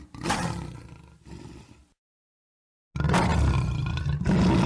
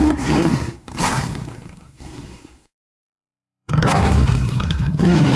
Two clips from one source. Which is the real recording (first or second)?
first